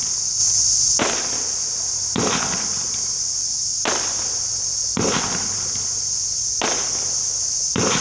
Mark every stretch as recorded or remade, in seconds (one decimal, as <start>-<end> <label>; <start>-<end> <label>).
0.0-8.0 recorded